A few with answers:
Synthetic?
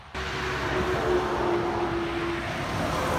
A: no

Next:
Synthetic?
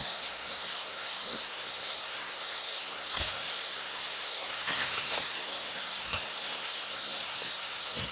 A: yes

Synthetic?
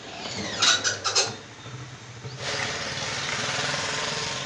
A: no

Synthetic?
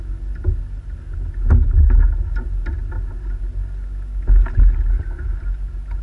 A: no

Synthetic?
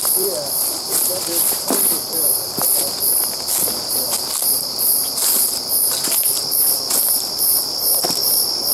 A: yes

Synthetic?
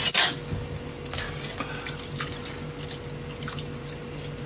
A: no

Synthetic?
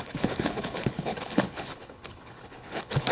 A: yes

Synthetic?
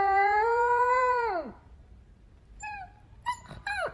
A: yes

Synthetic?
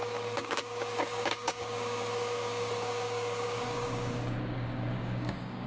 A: yes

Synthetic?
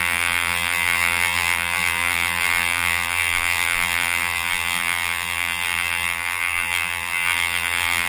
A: yes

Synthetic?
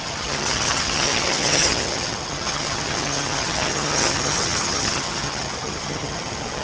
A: yes